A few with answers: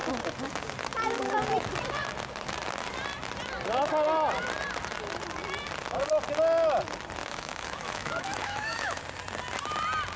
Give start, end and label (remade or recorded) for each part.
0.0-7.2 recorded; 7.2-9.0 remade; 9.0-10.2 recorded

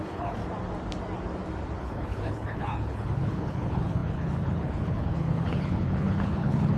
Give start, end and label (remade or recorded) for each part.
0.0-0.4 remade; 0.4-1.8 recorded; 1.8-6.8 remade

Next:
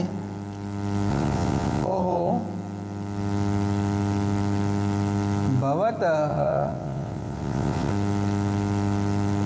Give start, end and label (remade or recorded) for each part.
0.0-1.1 recorded; 1.1-2.3 remade; 2.3-6.3 recorded; 6.3-7.9 remade; 7.9-9.5 recorded

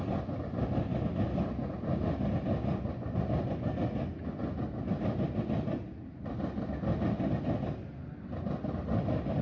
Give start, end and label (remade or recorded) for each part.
0.0-2.5 recorded; 2.5-3.5 remade; 3.5-9.4 recorded

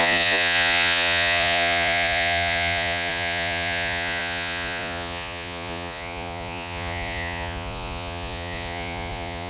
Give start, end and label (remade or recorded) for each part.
0.0-9.5 remade